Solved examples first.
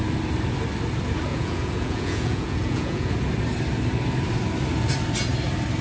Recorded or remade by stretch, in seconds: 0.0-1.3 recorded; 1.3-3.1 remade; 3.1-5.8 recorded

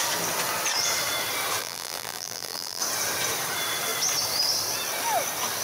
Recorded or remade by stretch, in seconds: 0.0-1.6 recorded; 1.6-2.8 remade; 2.8-5.6 recorded

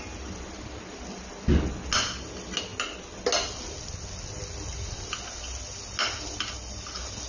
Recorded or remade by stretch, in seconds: 0.0-7.3 recorded

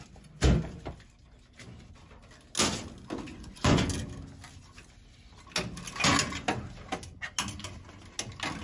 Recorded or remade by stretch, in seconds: 0.0-3.3 recorded; 3.3-3.9 remade; 3.9-8.6 recorded

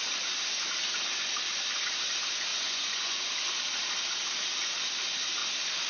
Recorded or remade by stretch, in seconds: 0.0-2.5 recorded; 2.5-3.3 remade; 3.3-5.9 recorded